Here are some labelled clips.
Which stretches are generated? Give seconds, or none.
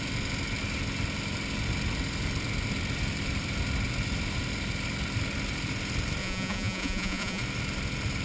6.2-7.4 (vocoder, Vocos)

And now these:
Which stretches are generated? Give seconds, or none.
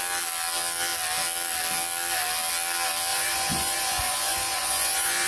3.1-5.3 (vocoder, Vocos)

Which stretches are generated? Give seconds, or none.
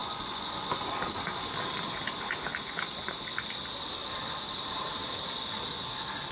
0.0-0.9 (vocoder, Vocos)